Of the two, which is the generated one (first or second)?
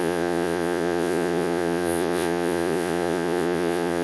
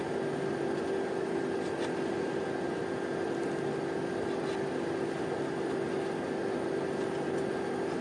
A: first